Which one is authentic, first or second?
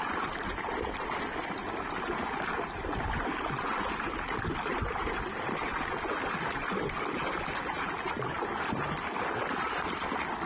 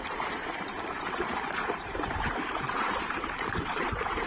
first